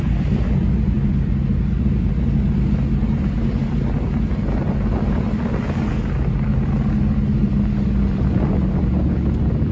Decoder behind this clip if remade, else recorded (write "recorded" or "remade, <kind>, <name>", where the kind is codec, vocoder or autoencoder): recorded